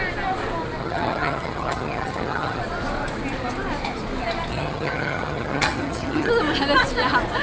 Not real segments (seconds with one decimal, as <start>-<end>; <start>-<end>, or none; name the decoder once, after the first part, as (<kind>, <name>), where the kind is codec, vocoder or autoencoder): 0.8-2.6 (vocoder, HiFi-GAN); 4.5-6.3